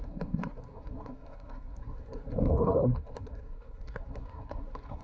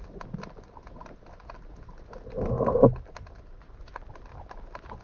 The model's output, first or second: first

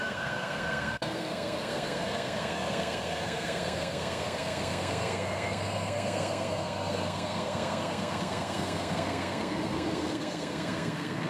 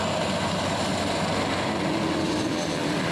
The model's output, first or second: first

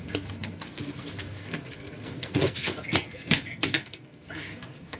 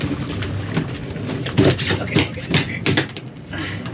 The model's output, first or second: first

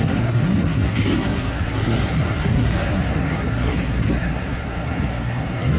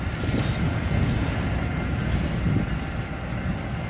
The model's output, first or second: first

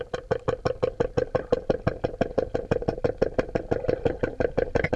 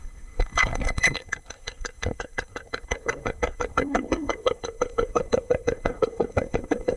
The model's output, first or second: second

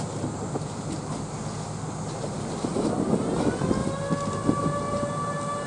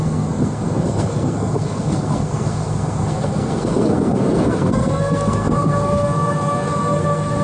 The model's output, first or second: second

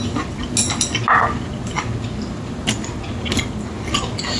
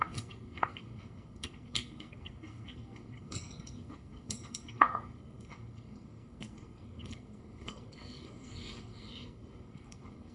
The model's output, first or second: second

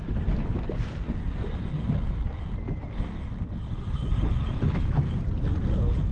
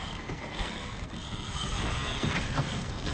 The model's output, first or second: second